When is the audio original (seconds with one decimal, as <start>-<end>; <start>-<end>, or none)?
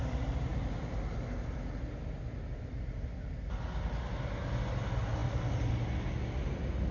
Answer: 0.0-6.9